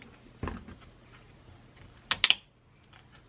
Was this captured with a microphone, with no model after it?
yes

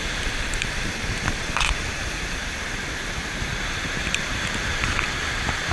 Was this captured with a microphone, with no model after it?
no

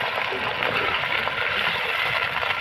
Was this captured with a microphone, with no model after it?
yes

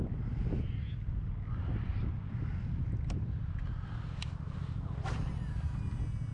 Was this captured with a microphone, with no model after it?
yes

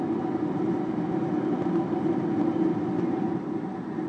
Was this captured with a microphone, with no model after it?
yes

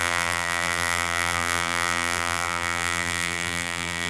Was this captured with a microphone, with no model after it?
no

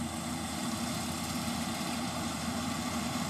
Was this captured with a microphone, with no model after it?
no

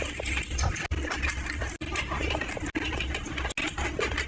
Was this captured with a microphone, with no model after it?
yes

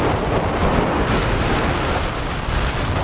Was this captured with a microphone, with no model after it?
yes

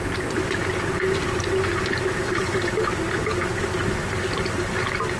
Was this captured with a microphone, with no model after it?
yes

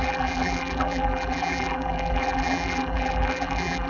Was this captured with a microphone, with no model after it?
no